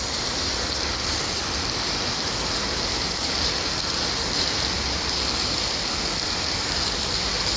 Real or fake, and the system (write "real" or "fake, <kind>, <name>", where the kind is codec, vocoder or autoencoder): real